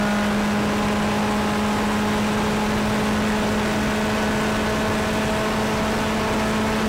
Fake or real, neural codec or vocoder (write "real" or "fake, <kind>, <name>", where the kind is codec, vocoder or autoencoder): real